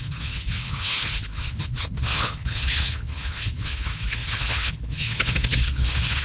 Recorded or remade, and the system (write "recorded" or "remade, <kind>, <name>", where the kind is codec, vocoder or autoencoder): remade, codec, HILCodec